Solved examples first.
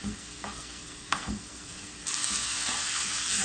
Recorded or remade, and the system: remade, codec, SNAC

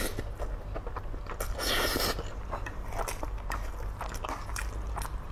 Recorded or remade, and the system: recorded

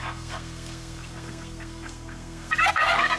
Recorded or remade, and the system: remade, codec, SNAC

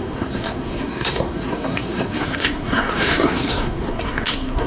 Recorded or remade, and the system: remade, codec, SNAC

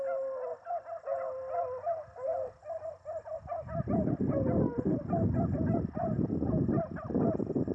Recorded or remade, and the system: recorded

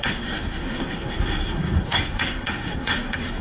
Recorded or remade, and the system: remade, codec, SNAC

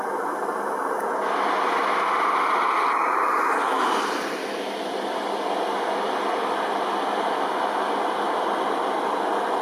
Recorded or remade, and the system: recorded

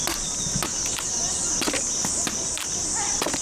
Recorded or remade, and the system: recorded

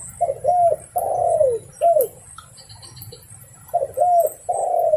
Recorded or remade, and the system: recorded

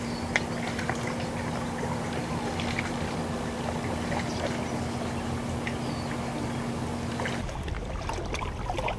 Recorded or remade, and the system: recorded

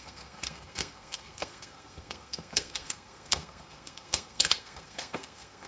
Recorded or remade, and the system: remade, codec, SNAC